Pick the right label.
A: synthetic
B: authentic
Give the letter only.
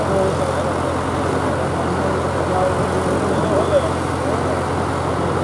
B